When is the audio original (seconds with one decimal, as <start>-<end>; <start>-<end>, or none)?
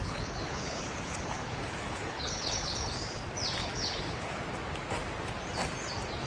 2.9-3.6; 4.4-6.3